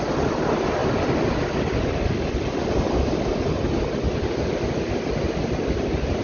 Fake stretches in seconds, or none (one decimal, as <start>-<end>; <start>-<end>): none